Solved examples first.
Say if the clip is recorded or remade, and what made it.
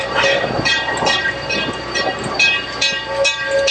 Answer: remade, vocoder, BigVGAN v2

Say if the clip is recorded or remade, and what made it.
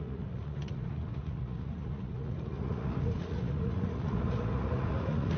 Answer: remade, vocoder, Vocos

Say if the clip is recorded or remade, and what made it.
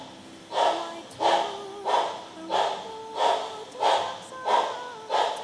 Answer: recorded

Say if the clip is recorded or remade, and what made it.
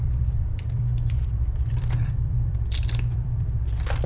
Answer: remade, vocoder, BigVGAN v2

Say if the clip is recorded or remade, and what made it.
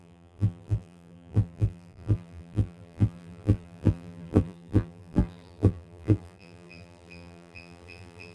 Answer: remade, vocoder, BigVGAN v2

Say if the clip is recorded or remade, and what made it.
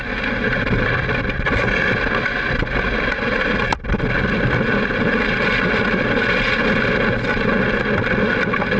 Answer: recorded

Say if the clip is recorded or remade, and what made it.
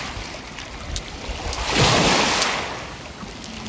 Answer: recorded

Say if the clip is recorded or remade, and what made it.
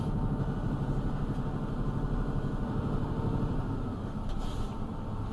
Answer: recorded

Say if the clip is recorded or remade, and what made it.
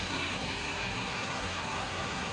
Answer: remade, codec, SNAC